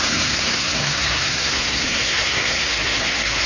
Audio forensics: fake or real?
fake